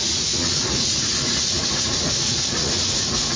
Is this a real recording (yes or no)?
no